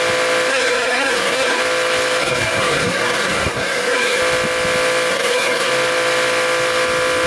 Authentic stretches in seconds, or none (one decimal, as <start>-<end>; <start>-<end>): 0.0-0.5; 1.6-2.2; 4.2-5.1; 5.7-7.3